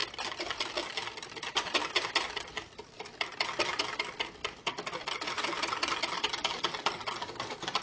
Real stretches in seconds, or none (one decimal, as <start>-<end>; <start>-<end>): 0.0-7.8